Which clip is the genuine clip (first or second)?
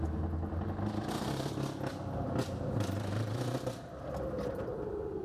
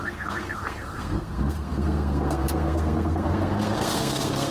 first